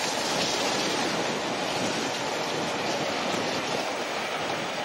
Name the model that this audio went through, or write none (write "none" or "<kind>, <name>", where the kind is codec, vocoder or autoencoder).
none